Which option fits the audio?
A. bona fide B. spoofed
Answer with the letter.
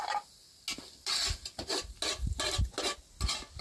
A